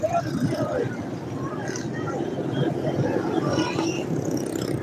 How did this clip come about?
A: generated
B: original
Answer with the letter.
B